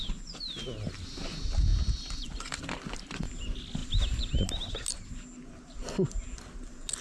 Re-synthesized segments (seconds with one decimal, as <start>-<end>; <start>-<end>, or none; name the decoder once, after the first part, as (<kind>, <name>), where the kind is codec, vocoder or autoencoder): none